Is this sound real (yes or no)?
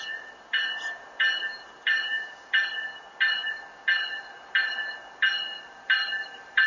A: no